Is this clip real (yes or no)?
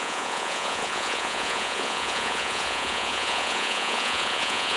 no